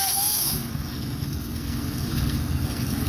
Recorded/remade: remade